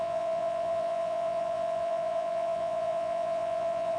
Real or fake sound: fake